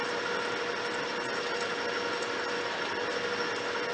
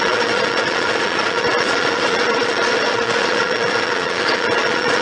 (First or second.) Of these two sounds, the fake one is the second